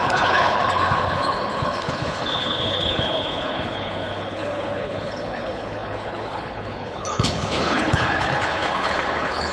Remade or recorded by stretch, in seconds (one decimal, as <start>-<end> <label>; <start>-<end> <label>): 0.0-9.5 remade